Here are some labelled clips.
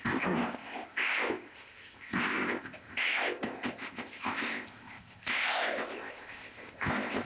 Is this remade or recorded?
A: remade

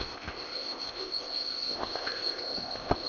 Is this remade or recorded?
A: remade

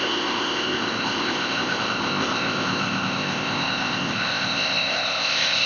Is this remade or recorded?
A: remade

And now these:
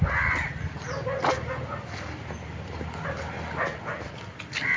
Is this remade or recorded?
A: recorded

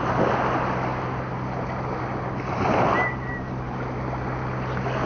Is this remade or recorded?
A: recorded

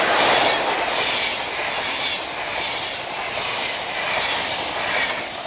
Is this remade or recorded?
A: recorded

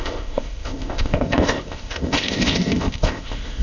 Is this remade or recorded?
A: remade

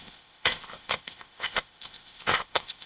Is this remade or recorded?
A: remade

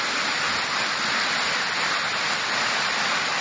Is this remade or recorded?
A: recorded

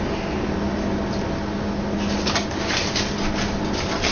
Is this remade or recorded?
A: recorded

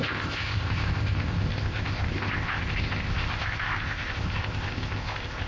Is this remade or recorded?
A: remade